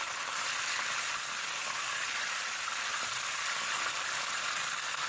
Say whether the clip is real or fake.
real